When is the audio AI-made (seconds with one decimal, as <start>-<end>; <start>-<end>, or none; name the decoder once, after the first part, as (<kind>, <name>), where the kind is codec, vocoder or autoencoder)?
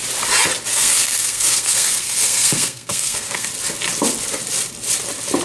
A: 0.7-3.5 (codec, SNAC)